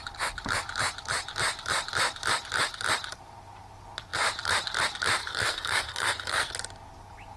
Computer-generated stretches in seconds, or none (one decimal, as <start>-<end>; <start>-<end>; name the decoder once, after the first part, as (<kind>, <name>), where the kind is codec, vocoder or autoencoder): 5.2-6.5 (codec, SNAC)